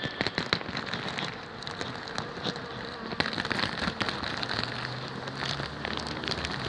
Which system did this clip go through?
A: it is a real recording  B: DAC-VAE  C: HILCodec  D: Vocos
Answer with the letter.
A